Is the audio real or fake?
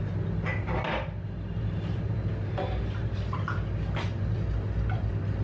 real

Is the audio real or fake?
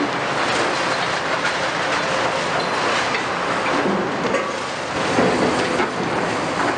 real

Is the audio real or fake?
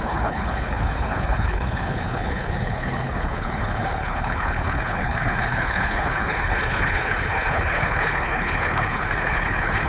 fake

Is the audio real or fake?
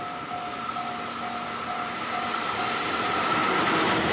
real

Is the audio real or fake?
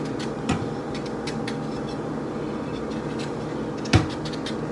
real